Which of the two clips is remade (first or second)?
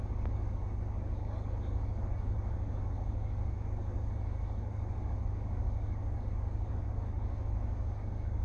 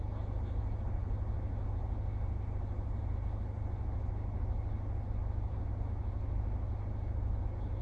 first